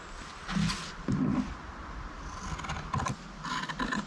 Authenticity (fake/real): real